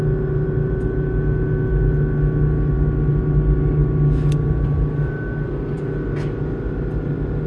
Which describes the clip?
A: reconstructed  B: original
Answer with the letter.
B